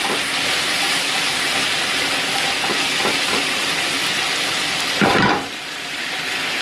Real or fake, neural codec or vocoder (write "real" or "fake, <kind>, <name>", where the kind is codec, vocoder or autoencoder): fake, vocoder, BigVGAN v2